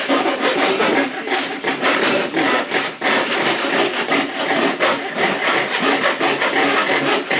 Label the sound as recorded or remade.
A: recorded